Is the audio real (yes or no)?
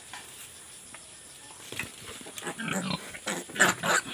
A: yes